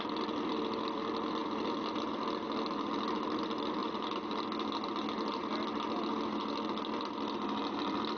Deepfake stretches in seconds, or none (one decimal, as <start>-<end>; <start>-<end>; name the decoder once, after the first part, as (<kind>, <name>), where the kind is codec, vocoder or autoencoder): 0.0-3.8 (vocoder, BigVGAN v2); 5.3-8.2